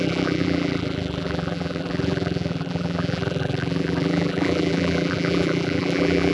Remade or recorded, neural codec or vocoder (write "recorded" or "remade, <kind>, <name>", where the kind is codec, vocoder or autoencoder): remade, vocoder, BigVGAN v2